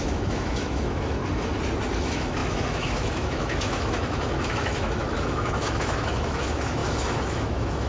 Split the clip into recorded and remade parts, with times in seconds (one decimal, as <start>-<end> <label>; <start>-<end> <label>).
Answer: 0.0-1.2 remade; 1.2-2.0 recorded; 2.0-7.9 remade